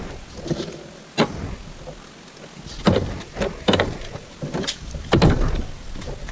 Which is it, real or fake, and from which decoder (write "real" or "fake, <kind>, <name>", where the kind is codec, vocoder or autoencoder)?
real